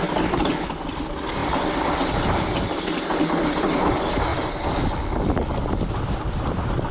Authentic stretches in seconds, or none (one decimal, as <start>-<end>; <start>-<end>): 1.4-3.2; 4.3-5.9

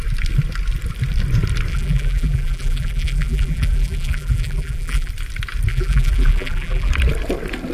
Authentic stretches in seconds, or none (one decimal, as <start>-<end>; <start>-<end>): 0.0-1.7; 5.1-5.7; 6.9-7.7

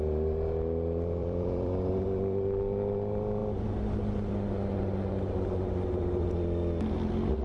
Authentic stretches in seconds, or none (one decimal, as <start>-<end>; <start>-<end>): 0.0-1.2; 1.9-7.4

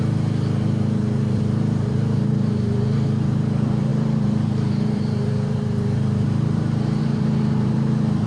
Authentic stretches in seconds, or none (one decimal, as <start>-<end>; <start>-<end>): none

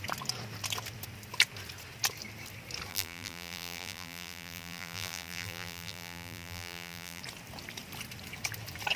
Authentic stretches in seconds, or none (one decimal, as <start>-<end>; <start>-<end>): 0.0-2.9; 7.2-9.0

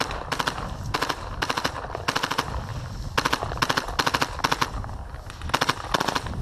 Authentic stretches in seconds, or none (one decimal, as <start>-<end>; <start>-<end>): 2.7-6.0

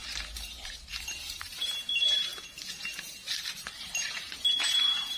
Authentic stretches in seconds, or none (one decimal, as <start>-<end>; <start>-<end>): 2.3-2.8